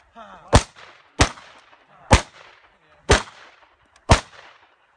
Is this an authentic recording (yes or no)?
yes